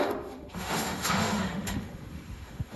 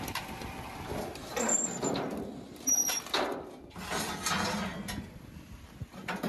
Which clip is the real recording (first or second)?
second